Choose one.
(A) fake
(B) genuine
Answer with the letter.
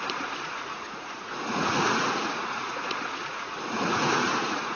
A